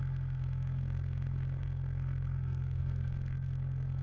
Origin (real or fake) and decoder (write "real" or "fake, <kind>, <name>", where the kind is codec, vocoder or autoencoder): fake, codec, SNAC